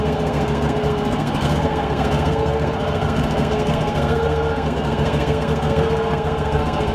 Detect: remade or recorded remade